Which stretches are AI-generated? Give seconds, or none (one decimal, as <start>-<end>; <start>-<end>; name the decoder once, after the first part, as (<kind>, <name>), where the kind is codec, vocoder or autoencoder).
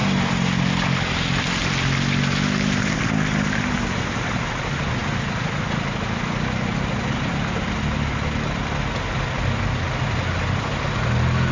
none